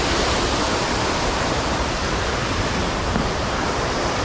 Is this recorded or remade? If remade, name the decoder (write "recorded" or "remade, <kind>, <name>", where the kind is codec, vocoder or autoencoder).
recorded